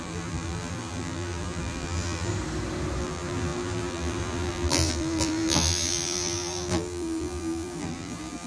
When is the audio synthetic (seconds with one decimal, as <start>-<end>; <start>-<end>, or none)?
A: 0.0-2.3; 3.0-8.5